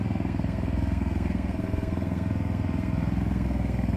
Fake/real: fake